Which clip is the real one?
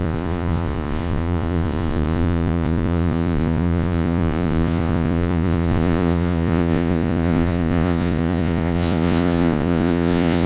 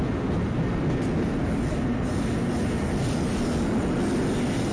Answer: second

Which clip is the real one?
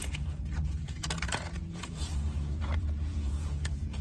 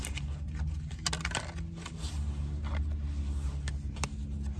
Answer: second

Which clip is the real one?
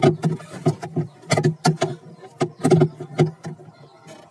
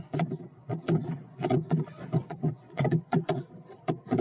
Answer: first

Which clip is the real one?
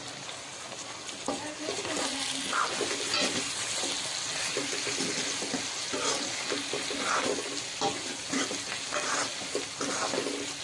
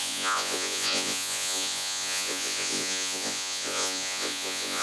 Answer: first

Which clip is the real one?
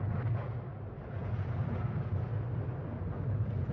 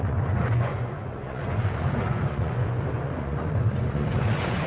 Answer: first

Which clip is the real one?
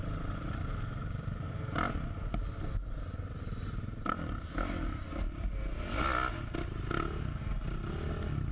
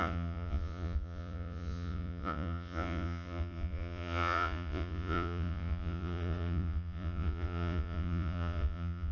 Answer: first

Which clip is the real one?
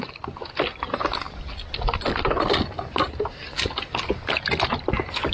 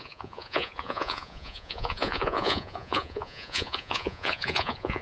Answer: first